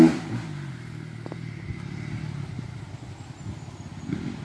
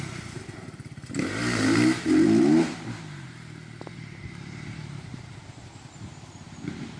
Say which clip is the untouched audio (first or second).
first